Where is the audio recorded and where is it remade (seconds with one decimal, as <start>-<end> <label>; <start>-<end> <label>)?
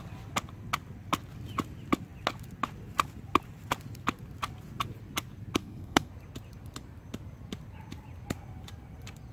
0.0-5.6 recorded; 5.6-6.1 remade; 6.1-9.3 recorded